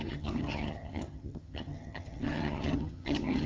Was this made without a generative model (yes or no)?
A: no